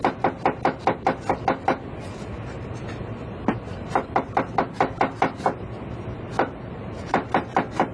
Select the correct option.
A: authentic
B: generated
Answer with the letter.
A